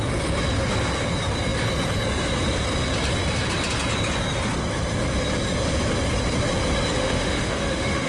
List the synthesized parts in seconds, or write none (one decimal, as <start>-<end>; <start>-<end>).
7.0-8.1